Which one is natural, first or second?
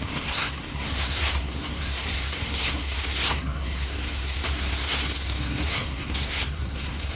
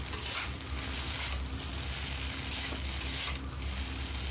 second